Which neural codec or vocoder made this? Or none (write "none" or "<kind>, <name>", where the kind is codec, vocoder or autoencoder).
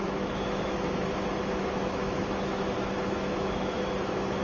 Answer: autoencoder, DAC-VAE